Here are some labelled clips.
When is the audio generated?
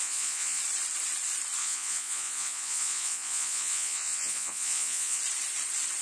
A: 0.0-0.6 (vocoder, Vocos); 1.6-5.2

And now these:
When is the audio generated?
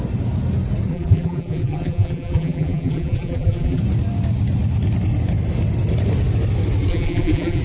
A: 0.9-3.8 (vocoder, BigVGAN v2); 6.9-7.6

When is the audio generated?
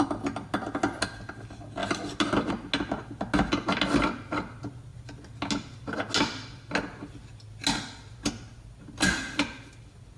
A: none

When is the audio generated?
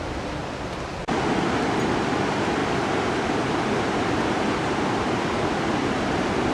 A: 0.0-0.4 (vocoder, BigVGAN v2); 1.8-6.5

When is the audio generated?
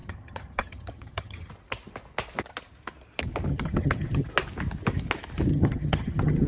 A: 0.0-1.5 (vocoder, HiFi-GAN); 3.5-4.3; 5.5-6.5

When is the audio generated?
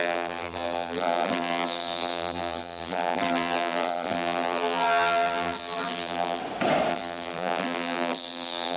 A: 0.0-6.4 (vocoder, BigVGAN v2); 6.9-8.8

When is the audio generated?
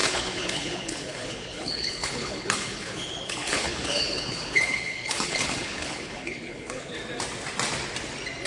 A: 0.0-7.0 (codec, HILCodec)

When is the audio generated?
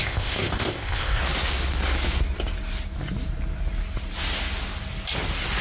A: 0.0-1.2 (codec, ZipCodec)